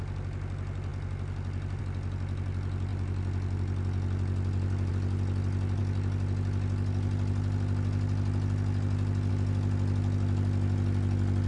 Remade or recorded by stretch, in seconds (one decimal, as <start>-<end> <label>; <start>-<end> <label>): 0.0-11.5 recorded